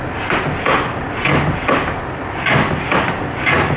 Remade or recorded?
recorded